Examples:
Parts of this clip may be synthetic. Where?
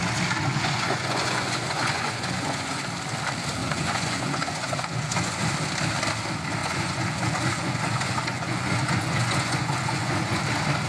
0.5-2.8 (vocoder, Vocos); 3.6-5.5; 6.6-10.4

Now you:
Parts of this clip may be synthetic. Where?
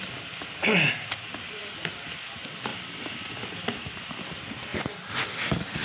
none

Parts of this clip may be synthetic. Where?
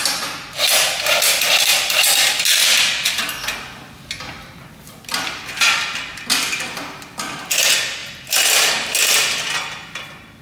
none